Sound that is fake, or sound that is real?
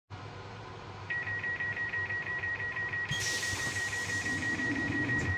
fake